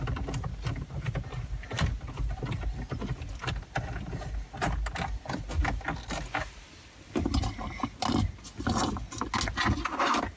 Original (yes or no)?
yes